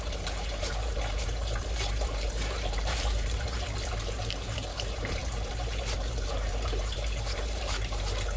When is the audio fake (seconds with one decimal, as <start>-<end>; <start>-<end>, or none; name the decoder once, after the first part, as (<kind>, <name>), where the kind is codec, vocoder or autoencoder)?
0.0-8.4 (vocoder, BigVGAN v2)